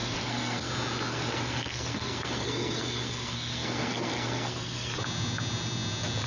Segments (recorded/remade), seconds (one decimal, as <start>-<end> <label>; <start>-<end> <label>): 0.0-0.7 remade; 0.7-1.1 recorded; 1.1-4.9 remade; 4.9-6.3 recorded